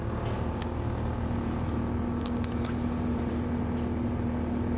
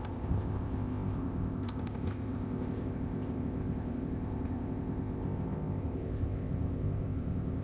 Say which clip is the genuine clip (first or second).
first